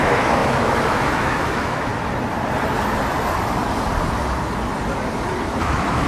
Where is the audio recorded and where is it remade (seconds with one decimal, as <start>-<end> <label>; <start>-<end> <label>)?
0.0-1.9 remade; 1.9-5.6 recorded; 5.6-6.1 remade